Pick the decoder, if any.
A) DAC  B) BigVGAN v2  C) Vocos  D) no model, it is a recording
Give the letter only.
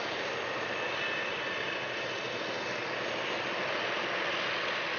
D